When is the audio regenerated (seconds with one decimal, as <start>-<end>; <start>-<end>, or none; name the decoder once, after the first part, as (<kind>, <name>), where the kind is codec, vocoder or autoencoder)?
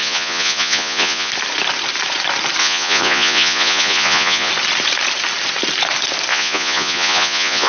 0.0-1.3 (vocoder, Vocos); 2.6-4.5; 6.3-7.7